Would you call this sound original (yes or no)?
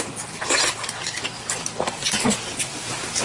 yes